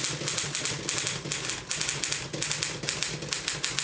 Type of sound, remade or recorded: recorded